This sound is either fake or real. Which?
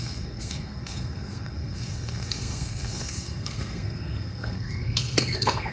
fake